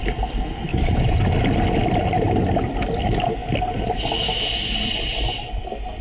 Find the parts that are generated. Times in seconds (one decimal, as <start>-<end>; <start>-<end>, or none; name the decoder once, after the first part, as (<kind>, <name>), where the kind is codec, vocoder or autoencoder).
0.7-1.2 (vocoder, Vocos)